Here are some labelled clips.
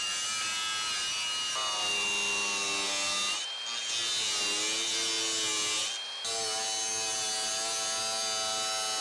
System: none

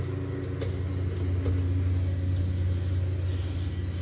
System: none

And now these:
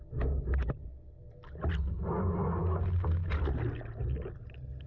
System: none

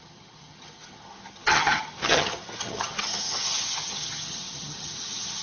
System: vocoder, HiFi-GAN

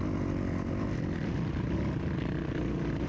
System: none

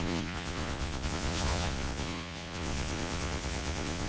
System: vocoder, Vocos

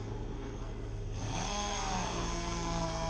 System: codec, SNAC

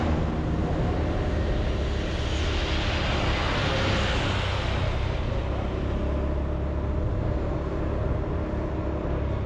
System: none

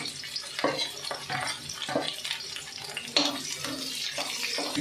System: none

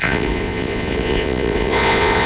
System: vocoder, Vocos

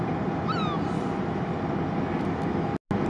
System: none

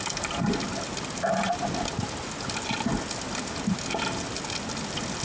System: none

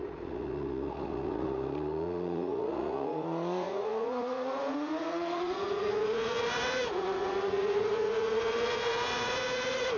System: vocoder, Vocos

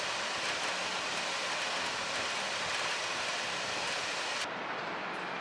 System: none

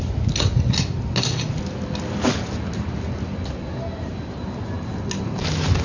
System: none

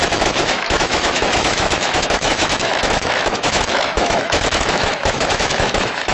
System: autoencoder, DAC-VAE